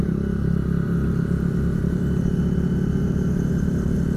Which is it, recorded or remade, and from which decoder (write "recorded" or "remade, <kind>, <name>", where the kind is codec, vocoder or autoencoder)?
recorded